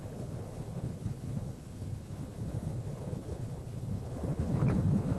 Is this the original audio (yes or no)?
no